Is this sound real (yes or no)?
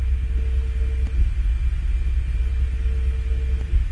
yes